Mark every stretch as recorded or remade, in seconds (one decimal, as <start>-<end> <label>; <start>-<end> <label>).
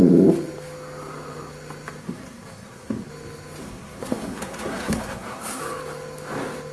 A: 0.0-2.0 recorded; 2.0-3.1 remade; 3.1-3.6 recorded; 3.6-5.6 remade; 5.6-6.7 recorded